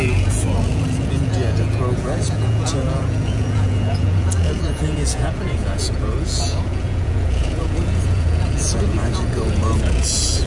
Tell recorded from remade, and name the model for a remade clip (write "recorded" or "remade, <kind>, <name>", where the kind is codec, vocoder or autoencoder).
remade, vocoder, Vocos